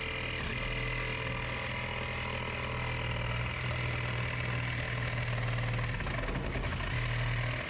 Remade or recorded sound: recorded